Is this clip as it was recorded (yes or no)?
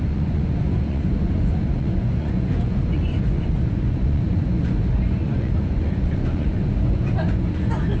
no